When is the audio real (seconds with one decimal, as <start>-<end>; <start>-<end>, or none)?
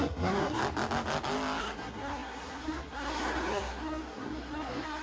0.6-1.6